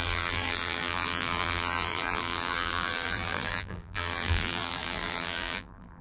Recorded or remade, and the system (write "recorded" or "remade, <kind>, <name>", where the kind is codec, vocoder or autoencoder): remade, vocoder, BigVGAN v2